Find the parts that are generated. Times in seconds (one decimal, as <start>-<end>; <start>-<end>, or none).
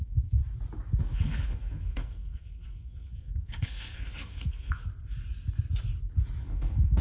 0.0-0.4; 1.0-4.9; 6.4-7.0